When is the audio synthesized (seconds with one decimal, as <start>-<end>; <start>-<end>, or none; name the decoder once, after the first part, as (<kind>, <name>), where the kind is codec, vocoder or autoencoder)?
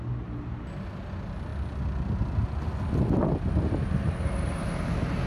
none